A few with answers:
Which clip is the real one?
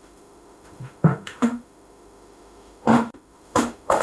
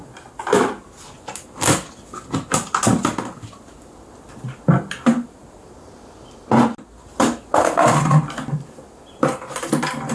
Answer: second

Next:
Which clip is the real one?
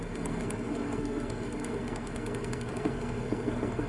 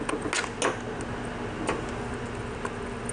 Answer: second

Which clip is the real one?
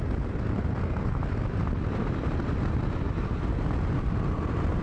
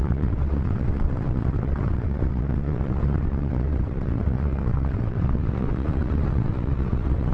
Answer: first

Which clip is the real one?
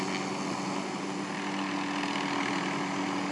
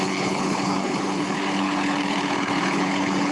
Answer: first